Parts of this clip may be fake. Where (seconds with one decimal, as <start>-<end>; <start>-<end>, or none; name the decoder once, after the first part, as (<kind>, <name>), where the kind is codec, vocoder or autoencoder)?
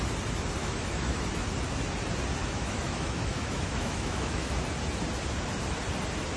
0.6-1.3 (autoencoder, DAC-VAE); 2.4-4.5